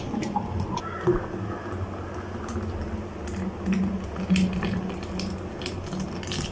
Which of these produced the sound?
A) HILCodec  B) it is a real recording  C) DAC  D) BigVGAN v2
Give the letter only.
B